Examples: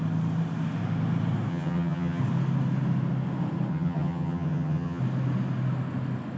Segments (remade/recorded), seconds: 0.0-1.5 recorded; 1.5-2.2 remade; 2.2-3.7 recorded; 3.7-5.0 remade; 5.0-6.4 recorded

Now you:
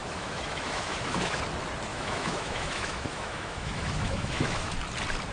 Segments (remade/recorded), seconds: 0.0-1.4 remade; 1.4-1.9 recorded; 1.9-4.7 remade; 4.7-5.3 recorded

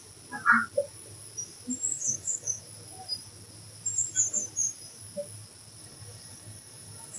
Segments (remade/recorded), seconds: 0.0-1.9 recorded; 1.9-2.6 remade; 2.6-5.8 recorded; 5.8-7.2 remade

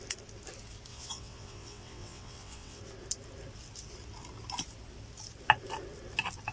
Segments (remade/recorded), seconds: 0.0-0.9 recorded; 0.9-2.8 remade; 2.8-6.5 recorded

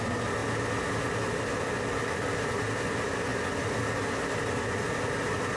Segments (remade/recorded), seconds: 0.0-5.6 recorded

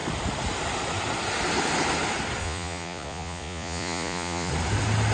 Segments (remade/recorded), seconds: 0.0-2.4 recorded; 2.4-4.5 remade; 4.5-5.1 recorded